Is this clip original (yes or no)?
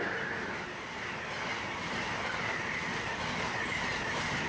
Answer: yes